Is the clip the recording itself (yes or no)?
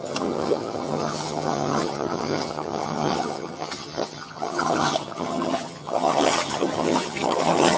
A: no